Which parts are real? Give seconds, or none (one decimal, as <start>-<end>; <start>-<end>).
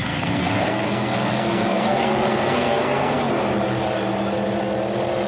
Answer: 3.2-5.3